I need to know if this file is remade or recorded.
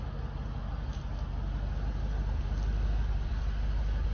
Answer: recorded